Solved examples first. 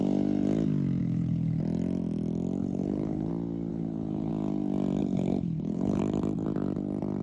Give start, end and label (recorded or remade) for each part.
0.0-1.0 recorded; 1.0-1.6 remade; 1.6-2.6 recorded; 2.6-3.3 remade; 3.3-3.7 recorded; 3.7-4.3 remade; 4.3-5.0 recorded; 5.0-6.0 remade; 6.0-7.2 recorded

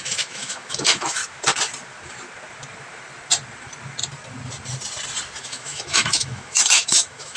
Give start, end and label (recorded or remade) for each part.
0.0-1.2 remade; 1.2-5.4 recorded; 5.4-7.4 remade

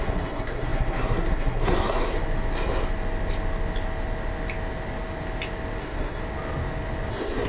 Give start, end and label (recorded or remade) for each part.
0.0-2.2 remade; 2.2-5.8 recorded; 5.8-6.2 remade; 6.2-7.1 recorded; 7.1-7.5 remade

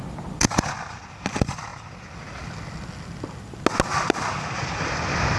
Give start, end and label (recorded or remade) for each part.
0.0-5.4 recorded